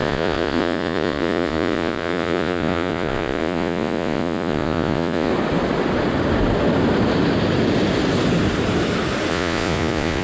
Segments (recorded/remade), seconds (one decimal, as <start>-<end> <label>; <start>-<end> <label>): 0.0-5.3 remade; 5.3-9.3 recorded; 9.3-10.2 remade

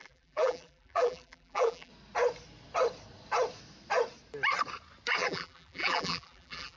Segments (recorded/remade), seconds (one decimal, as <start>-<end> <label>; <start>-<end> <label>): 0.0-1.9 remade; 1.9-5.2 recorded; 5.2-6.8 remade

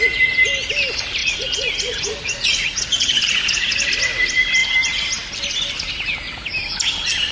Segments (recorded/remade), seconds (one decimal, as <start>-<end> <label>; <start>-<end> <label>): 0.0-1.2 recorded; 1.2-3.9 remade; 3.9-7.3 recorded

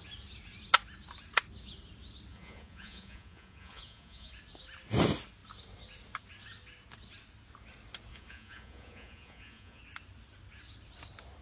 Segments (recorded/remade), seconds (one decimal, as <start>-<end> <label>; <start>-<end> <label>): 0.0-2.3 recorded; 2.3-4.3 remade; 4.3-8.1 recorded; 8.1-9.8 remade; 9.8-11.4 recorded

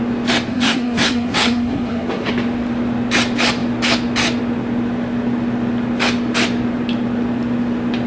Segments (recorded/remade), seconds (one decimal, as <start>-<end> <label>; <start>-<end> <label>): 0.0-0.5 recorded; 0.5-2.3 remade; 2.3-8.1 recorded

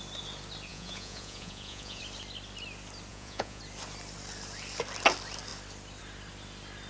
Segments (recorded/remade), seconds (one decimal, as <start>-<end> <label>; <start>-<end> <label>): 0.0-0.7 recorded; 0.7-2.0 remade; 2.0-3.1 recorded; 3.1-3.6 remade; 3.6-6.9 recorded

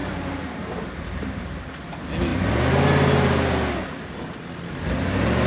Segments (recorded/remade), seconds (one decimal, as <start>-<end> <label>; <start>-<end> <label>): 0.0-1.7 remade; 1.7-5.5 recorded